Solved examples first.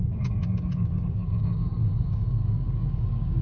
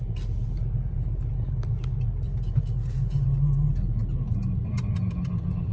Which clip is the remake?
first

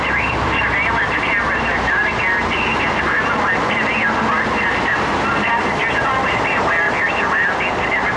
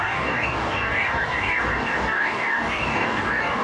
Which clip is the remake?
second